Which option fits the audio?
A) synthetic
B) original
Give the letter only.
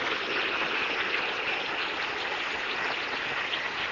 B